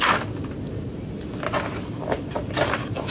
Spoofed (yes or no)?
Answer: no